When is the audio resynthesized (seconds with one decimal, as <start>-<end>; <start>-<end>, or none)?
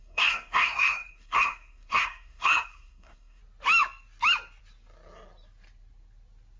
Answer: 0.0-3.4